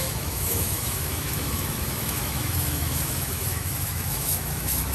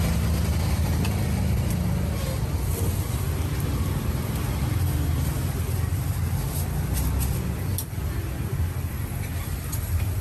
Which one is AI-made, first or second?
first